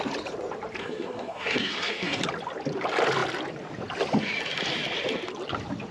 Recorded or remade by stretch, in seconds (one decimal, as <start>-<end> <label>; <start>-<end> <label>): 0.0-0.8 recorded; 0.8-2.2 remade; 2.2-5.9 recorded